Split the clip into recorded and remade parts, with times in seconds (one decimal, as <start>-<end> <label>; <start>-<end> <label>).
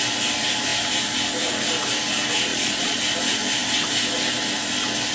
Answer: 0.0-2.5 recorded; 2.5-3.0 remade; 3.0-5.1 recorded